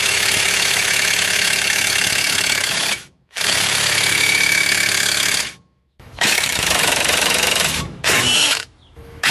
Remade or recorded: remade